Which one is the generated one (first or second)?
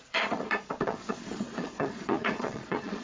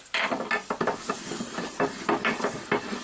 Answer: first